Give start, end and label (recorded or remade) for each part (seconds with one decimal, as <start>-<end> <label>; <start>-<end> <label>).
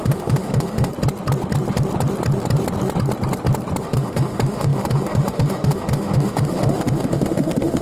0.0-0.9 remade; 0.9-3.8 recorded; 3.8-7.8 remade